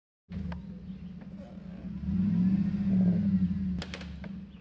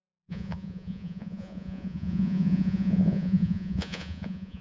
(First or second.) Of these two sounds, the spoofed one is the second